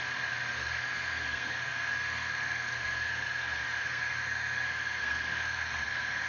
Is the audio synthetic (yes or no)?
yes